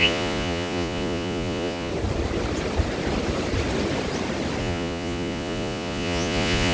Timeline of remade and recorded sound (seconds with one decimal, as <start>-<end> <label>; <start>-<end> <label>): 0.0-1.9 remade; 1.9-4.6 recorded; 4.6-6.7 remade

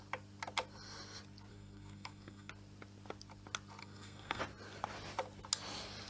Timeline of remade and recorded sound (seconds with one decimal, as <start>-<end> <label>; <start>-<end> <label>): 0.0-1.5 recorded; 1.5-2.5 remade; 2.5-3.8 recorded; 3.8-4.4 remade; 4.4-6.1 recorded

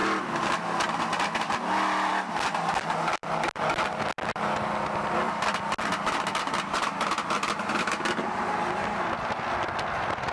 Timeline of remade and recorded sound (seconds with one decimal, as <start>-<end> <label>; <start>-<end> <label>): 0.0-10.3 recorded

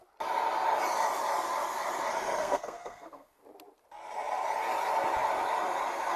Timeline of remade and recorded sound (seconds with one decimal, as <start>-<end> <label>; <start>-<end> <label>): 0.0-2.4 recorded; 2.4-3.4 remade; 3.4-6.2 recorded

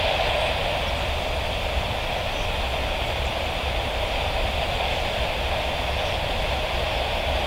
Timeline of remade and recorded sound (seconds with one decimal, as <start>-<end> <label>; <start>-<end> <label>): 0.0-7.5 recorded

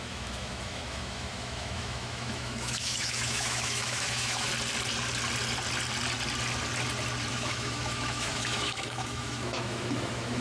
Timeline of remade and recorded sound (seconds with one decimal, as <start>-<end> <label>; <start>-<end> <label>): 0.0-4.5 remade; 4.5-7.3 recorded; 7.3-10.4 remade